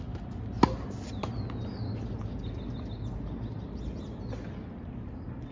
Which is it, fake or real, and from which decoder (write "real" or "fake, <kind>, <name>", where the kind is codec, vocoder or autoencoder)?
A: real